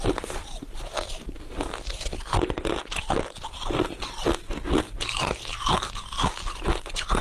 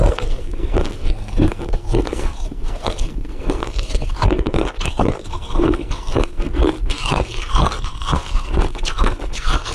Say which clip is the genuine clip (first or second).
first